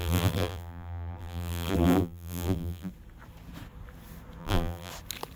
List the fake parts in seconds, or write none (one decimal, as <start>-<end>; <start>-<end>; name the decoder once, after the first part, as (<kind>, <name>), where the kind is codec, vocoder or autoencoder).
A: 0.0-2.9 (vocoder, BigVGAN v2); 4.4-4.9